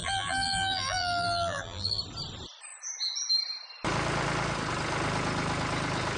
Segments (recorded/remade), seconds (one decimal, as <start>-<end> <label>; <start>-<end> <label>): 0.0-2.0 remade; 2.0-6.2 recorded